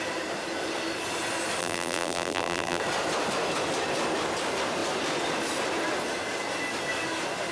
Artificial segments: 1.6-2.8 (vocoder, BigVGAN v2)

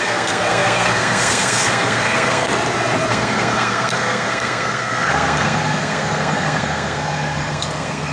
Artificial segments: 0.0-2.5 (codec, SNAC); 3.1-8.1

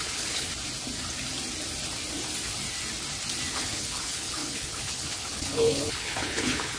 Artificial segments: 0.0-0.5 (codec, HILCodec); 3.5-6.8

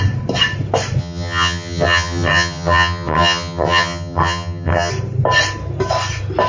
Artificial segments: 1.0-4.9 (vocoder, HiFi-GAN)

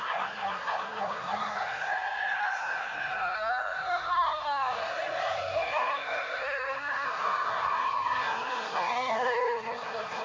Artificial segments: 0.0-10.2 (codec, SNAC)

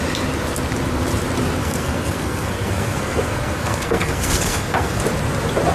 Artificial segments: 1.6-5.0 (codec, SNAC)

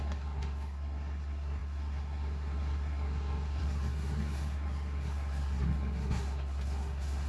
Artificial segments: 0.0-7.3 (codec, SNAC)

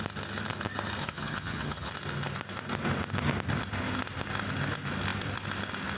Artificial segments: 1.0-1.9 (vocoder, HiFi-GAN)